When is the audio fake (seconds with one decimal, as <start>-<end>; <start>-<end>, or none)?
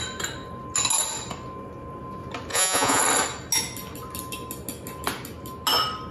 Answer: 2.5-3.0